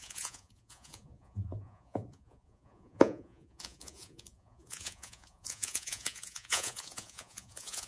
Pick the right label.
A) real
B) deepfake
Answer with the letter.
B